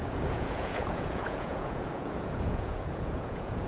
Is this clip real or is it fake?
fake